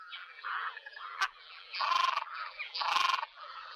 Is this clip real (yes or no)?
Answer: no